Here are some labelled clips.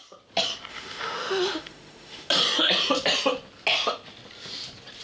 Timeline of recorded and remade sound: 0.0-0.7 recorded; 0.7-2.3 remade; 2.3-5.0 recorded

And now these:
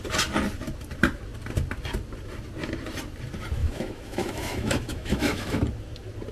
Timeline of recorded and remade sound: 0.0-3.6 recorded; 3.6-5.6 remade; 5.6-6.3 recorded